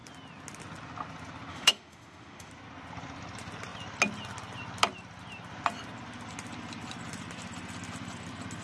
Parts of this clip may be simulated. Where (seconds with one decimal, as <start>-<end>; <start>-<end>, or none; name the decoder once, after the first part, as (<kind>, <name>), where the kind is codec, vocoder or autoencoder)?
1.5-2.5 (autoencoder, DAC-VAE)